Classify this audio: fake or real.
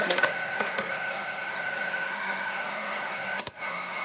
fake